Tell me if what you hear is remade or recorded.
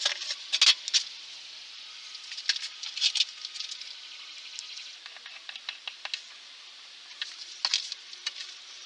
recorded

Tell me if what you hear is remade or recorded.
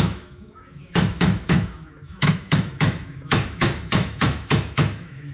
remade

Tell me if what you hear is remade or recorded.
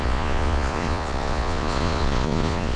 remade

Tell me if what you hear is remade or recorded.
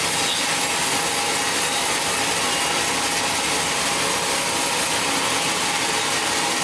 recorded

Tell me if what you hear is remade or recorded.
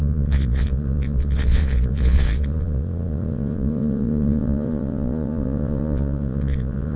remade